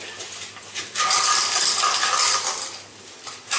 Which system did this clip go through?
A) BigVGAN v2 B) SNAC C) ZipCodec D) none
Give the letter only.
D